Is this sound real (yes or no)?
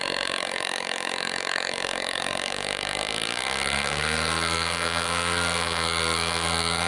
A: no